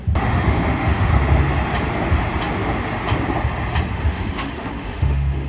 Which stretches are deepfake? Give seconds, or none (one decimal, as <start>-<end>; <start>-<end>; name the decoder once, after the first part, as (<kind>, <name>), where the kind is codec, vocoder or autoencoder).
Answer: 0.0-1.1 (autoencoder, DAC-VAE); 3.9-5.5